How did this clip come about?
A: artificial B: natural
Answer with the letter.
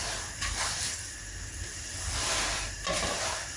B